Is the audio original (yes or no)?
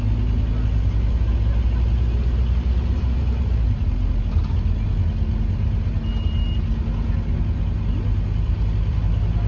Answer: yes